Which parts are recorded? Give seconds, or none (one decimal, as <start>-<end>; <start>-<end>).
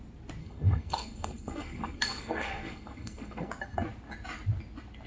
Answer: 0.0-0.4; 3.5-5.1